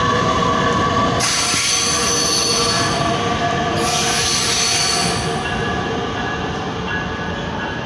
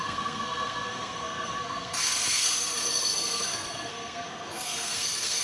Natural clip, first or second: first